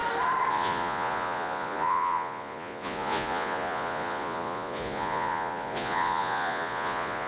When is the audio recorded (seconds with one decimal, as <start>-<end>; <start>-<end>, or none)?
0.0-0.5